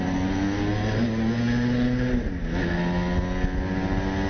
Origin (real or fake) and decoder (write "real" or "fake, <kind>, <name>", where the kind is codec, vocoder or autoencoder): real